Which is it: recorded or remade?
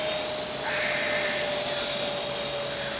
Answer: recorded